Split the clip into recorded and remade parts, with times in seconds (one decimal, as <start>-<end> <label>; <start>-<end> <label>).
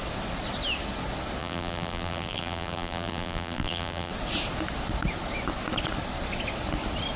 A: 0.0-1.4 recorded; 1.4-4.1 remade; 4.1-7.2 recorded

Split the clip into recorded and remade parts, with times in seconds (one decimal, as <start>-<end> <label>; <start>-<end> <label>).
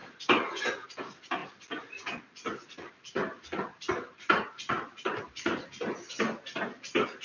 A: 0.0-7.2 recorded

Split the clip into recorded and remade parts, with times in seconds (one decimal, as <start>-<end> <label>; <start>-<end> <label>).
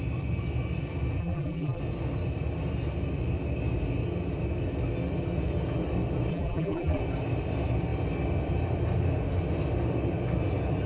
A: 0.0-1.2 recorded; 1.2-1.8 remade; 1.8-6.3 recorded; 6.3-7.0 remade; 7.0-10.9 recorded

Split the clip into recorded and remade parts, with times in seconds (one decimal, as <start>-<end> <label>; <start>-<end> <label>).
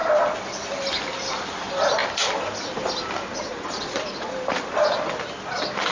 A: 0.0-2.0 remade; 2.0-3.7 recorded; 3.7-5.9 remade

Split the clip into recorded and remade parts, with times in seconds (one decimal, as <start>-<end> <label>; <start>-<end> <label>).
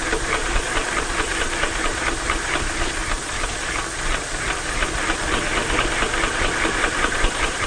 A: 0.0-3.0 remade; 3.0-6.7 recorded; 6.7-7.7 remade